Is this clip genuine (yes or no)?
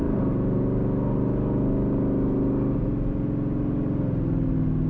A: yes